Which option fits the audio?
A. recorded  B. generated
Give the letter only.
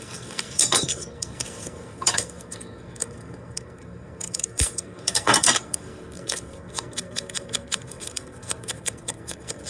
B